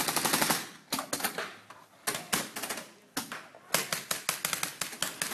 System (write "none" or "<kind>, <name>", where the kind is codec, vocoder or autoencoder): none